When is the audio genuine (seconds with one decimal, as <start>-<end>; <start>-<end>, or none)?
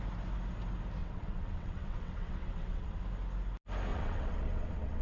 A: 0.0-1.0; 3.0-3.9